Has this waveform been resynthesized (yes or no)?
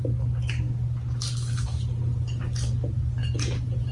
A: no